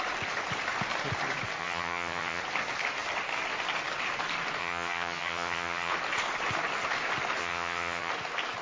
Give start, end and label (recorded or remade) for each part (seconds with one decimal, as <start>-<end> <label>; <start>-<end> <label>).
0.0-1.6 recorded; 1.6-2.4 remade; 2.4-4.6 recorded; 4.6-5.9 remade; 5.9-7.4 recorded; 7.4-8.1 remade; 8.1-8.6 recorded